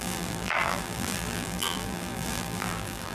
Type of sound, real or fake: fake